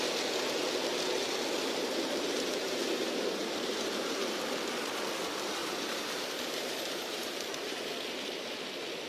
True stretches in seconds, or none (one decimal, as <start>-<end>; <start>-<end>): 0.0-1.6; 4.6-5.6; 7.9-9.1